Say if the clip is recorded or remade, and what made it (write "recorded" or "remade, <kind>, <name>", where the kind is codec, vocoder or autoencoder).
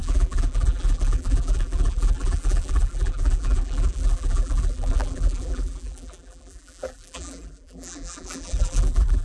remade, vocoder, BigVGAN v2